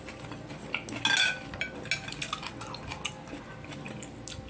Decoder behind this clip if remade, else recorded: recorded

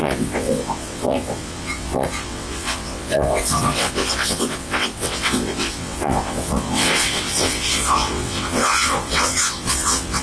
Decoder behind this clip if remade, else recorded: remade, vocoder, WaveNeXt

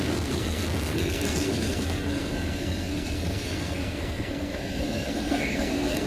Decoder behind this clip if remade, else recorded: remade, codec, SNAC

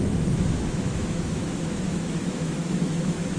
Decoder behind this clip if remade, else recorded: remade, autoencoder, DAC-VAE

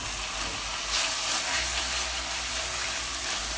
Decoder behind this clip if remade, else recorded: recorded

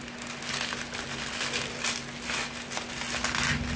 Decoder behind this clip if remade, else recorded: recorded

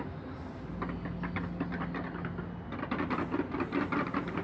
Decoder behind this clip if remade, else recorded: recorded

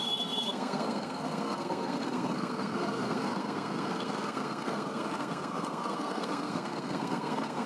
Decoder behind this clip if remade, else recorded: remade, codec, SNAC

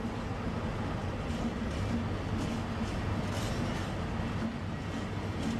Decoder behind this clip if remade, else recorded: recorded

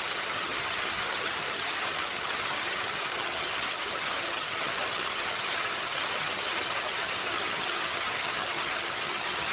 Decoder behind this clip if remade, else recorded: remade, vocoder, HiFi-GAN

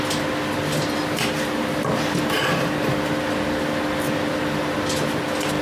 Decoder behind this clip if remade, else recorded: recorded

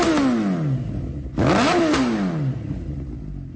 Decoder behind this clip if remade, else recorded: recorded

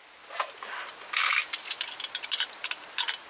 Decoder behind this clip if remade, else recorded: recorded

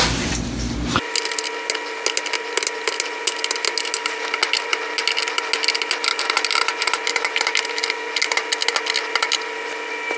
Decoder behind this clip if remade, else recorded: recorded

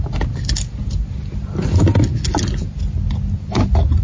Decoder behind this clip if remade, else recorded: recorded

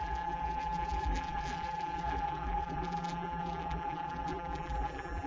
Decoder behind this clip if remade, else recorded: remade, vocoder, BigVGAN v2